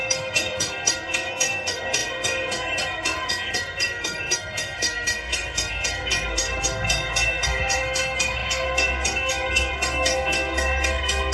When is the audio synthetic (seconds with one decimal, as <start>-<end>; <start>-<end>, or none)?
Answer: 0.0-11.3